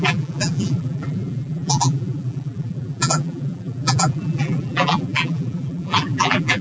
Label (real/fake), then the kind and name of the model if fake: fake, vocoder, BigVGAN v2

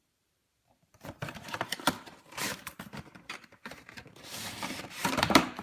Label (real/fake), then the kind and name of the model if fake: fake, vocoder, BigVGAN v2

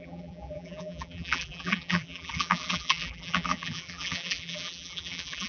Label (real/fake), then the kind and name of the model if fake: fake, vocoder, BigVGAN v2